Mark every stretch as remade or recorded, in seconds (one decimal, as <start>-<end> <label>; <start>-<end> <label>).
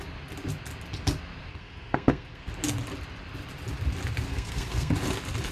0.0-1.5 recorded; 1.5-2.5 remade; 2.5-4.3 recorded; 4.3-4.9 remade; 4.9-5.5 recorded